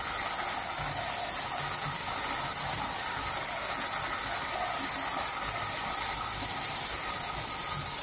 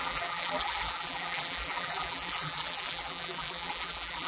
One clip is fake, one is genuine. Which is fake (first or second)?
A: second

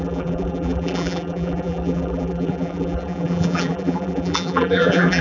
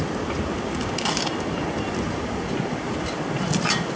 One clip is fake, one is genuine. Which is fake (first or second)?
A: first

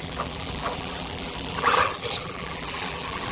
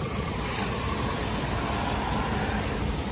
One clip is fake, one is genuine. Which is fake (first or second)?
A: first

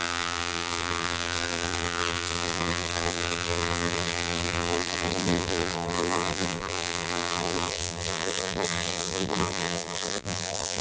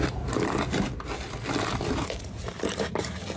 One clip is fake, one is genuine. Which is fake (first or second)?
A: first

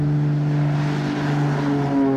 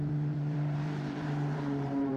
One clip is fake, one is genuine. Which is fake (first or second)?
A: second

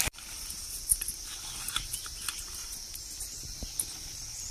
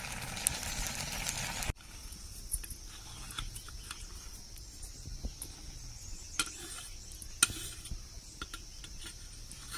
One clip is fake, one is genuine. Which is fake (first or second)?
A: first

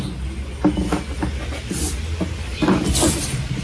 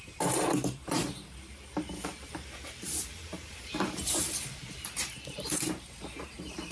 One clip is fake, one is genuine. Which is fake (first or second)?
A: second